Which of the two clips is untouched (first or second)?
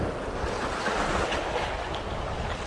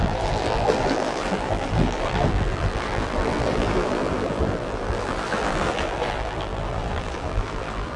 first